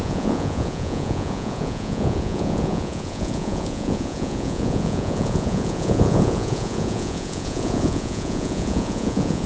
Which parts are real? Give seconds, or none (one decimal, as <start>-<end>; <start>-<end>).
none